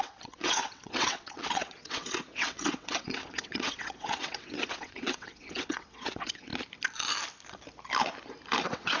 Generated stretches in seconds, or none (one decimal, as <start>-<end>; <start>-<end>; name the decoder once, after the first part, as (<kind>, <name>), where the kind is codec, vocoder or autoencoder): 0.0-6.5 (vocoder, WaveNeXt); 8.6-9.0